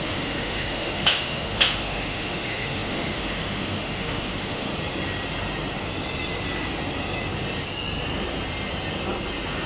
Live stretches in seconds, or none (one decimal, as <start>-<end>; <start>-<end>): 4.7-9.7